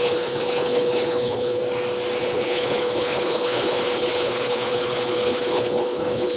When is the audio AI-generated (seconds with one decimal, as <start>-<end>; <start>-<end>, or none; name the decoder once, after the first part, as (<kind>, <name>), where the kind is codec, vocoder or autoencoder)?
0.0-1.6 (codec, HILCodec); 2.2-6.4